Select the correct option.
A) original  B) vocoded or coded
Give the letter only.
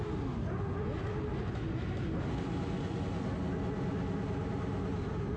A